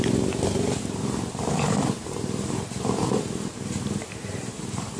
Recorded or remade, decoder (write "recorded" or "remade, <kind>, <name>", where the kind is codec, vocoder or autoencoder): remade, vocoder, BigVGAN v2